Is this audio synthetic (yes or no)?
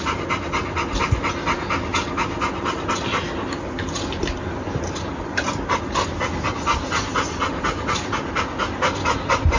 no